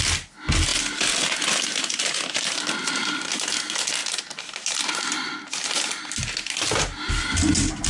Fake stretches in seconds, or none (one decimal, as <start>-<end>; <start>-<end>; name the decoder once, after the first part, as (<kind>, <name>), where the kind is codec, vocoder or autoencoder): 4.0-4.9 (vocoder, BigVGAN v2)